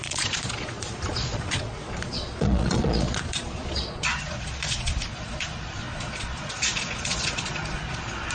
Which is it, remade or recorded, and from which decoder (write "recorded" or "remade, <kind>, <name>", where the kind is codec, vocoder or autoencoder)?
remade, vocoder, Vocos